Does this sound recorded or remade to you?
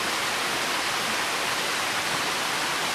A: recorded